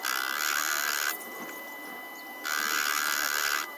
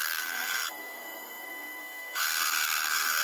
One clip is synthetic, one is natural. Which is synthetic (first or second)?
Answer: second